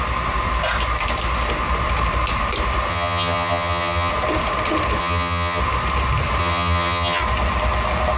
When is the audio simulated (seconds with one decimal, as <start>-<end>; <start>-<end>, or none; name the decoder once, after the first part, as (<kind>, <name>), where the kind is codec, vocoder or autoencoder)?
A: 2.9-4.1 (vocoder, HiFi-GAN); 5.0-5.6; 6.4-7.2